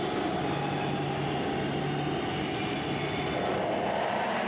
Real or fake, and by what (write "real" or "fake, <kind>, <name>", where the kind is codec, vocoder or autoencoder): real